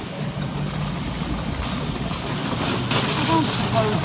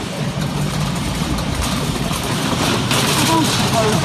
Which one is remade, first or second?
second